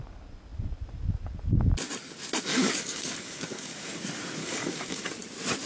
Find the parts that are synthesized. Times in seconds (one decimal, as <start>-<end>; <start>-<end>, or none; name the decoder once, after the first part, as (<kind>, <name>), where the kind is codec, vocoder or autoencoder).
2.5-4.0 (codec, DAC); 4.4-5.1